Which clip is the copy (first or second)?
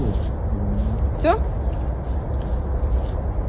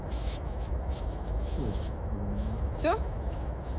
second